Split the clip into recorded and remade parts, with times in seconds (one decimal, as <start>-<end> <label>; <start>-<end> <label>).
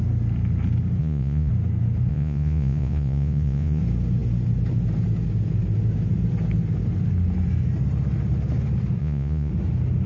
0.0-1.0 recorded; 1.0-1.5 remade; 1.5-2.1 recorded; 2.1-3.8 remade; 3.8-9.0 recorded; 9.0-9.5 remade; 9.5-10.1 recorded